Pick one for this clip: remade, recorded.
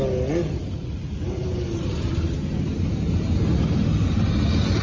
recorded